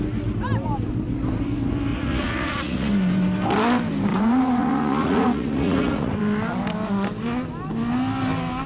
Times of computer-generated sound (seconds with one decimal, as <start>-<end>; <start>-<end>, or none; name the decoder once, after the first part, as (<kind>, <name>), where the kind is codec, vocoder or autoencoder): 1.9-2.9 (vocoder, Vocos); 4.1-6.2